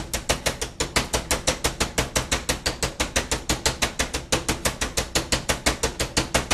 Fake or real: real